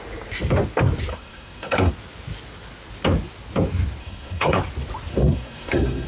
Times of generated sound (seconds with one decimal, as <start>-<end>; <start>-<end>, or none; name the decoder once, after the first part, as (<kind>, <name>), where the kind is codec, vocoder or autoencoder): 1.1-1.9 (codec, SNAC); 4.0-4.6; 5.1-6.1

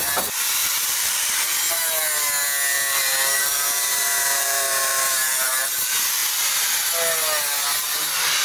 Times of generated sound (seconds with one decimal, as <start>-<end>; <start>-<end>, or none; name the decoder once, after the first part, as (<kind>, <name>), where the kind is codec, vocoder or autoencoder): 0.6-1.4 (vocoder, BigVGAN v2); 2.7-5.5